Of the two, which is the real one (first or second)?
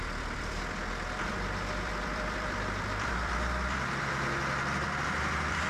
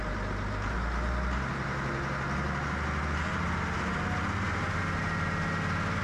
second